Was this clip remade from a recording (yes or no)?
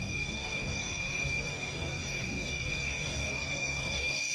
yes